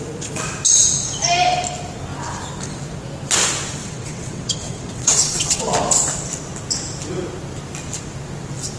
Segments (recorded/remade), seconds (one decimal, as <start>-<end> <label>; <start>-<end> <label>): 0.0-3.8 recorded; 3.8-5.6 remade; 5.6-8.8 recorded